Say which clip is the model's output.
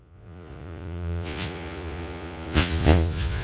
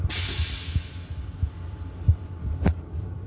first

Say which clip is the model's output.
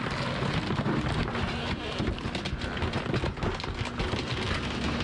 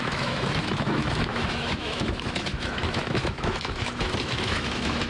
second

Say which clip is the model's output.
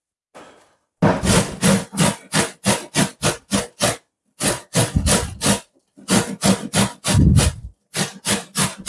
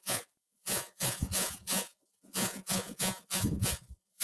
second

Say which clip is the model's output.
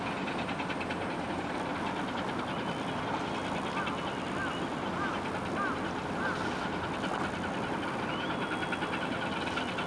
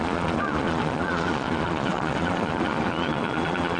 second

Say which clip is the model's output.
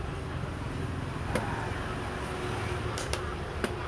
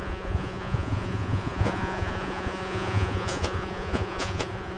second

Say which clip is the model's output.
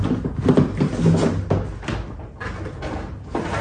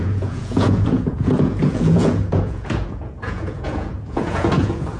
second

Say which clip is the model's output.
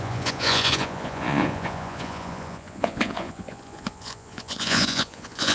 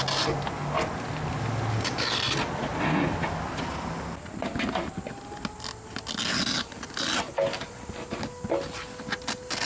first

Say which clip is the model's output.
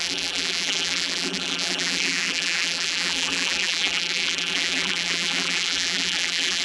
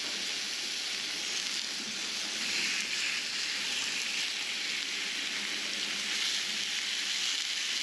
first